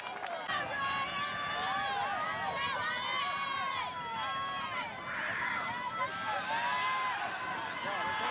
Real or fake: real